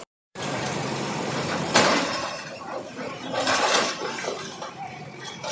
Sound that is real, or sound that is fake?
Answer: fake